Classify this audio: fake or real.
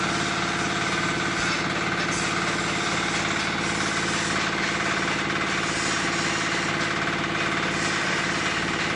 real